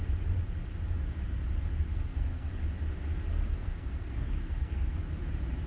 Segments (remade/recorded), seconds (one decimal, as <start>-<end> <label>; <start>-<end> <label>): 0.0-1.9 recorded; 1.9-2.5 remade; 2.5-3.3 recorded; 3.3-5.0 remade; 5.0-5.7 recorded